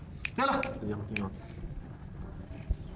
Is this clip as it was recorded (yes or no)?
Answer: yes